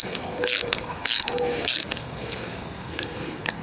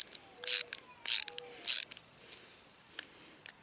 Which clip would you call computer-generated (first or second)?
first